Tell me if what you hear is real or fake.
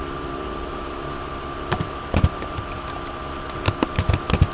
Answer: real